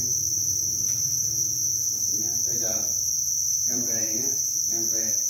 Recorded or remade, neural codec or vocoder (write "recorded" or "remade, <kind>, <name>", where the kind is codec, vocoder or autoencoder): remade, vocoder, BigVGAN v2